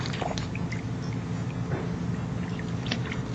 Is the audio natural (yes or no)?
yes